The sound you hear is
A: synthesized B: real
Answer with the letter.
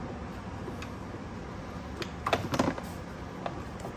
B